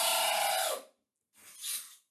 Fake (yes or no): no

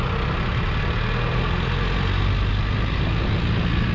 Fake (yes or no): no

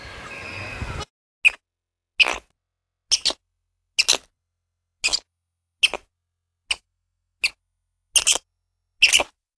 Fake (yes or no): no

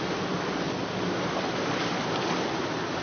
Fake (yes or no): no